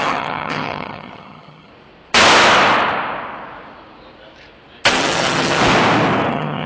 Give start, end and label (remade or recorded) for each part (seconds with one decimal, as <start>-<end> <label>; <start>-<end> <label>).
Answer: 0.0-1.7 remade; 1.7-4.9 recorded; 4.9-5.6 remade; 5.6-6.3 recorded; 6.3-6.7 remade